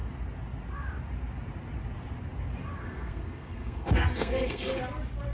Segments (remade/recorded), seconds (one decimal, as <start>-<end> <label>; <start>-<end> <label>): 0.0-2.8 recorded; 2.8-4.8 remade; 4.8-5.3 recorded